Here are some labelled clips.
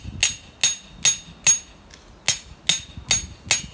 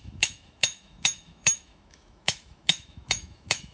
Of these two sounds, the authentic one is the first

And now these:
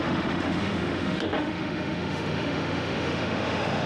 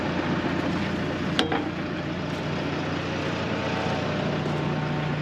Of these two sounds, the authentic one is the second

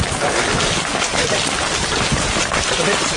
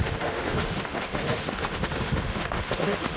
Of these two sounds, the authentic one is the first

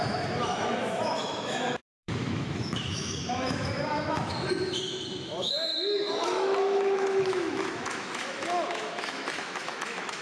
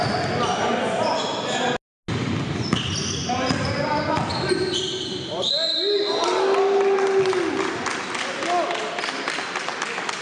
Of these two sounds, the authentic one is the second